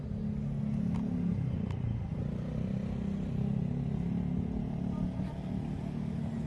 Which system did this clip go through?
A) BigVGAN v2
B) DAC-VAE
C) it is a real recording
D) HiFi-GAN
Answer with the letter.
C